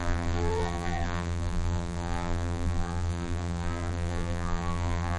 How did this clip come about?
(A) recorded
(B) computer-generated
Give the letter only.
B